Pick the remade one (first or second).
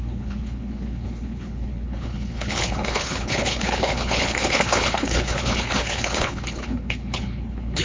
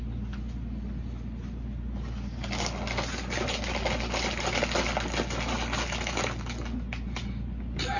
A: first